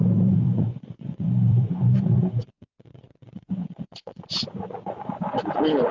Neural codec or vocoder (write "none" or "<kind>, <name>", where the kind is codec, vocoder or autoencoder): vocoder, Vocos